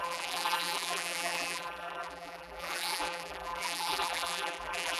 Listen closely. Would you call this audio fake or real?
fake